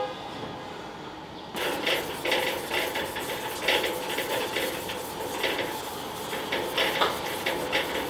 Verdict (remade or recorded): recorded